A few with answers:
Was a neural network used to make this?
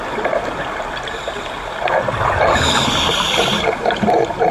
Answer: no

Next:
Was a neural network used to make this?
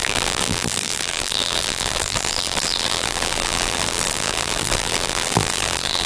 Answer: yes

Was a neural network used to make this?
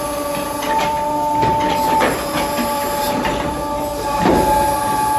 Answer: yes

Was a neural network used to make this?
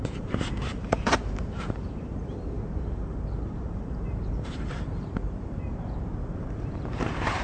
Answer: yes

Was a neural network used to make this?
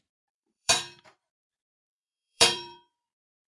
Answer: yes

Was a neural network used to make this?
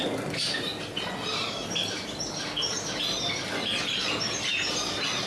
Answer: no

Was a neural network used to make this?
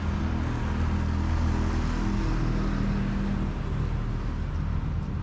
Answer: no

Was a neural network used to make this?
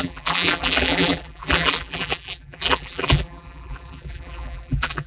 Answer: yes